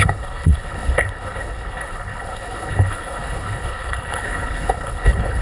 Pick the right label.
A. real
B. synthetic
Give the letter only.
B